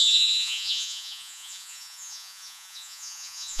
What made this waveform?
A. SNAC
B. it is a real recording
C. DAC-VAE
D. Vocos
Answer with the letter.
D